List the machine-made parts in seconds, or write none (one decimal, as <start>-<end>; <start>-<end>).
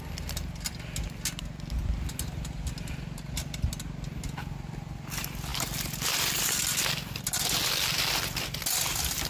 none